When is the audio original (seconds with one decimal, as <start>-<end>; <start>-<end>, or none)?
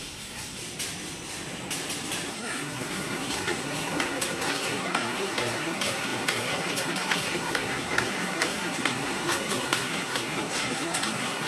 0.6-2.3